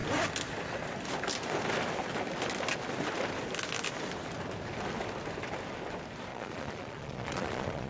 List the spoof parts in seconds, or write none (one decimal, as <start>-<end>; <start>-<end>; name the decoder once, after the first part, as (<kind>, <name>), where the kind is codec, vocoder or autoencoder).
6.3-7.9 (vocoder, Vocos)